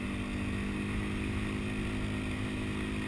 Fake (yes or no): no